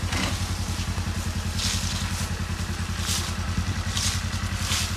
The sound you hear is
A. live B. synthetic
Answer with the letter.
A